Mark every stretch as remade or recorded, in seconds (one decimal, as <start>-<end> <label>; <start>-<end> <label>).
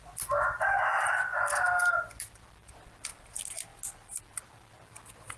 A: 0.0-5.4 recorded